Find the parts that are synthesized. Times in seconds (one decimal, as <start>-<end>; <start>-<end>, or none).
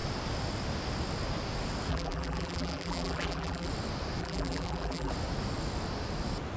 1.9-3.7; 4.2-5.1